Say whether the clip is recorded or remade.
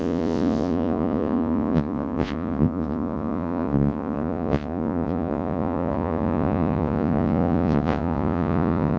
remade